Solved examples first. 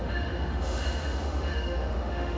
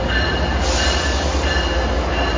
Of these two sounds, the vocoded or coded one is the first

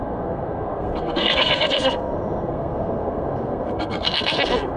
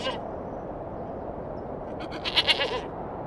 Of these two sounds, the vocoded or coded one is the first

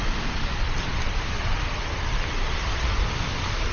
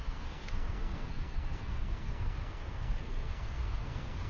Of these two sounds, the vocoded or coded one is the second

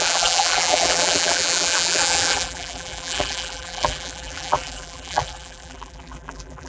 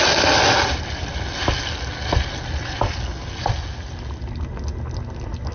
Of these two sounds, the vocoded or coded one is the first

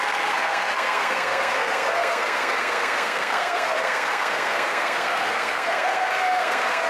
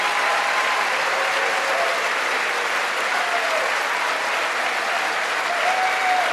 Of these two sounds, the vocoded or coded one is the first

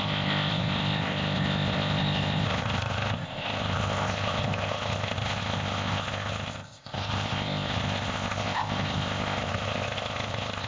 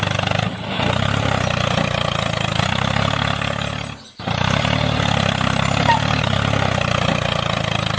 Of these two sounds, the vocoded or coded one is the first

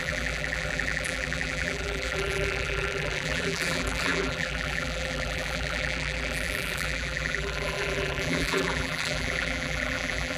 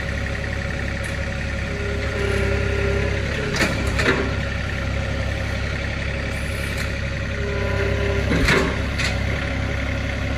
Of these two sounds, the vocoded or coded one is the first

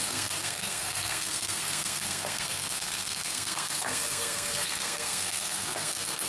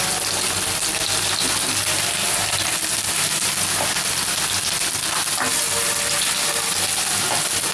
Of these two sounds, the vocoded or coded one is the first